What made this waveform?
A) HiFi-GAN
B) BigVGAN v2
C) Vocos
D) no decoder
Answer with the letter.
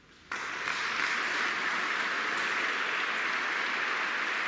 D